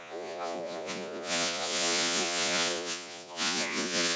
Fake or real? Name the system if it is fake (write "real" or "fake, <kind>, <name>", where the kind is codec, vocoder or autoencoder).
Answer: fake, vocoder, Vocos